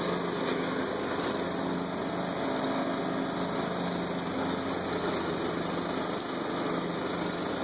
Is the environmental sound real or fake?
real